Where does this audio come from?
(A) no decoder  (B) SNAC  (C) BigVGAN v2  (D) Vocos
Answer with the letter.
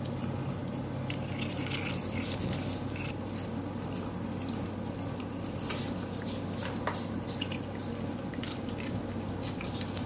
A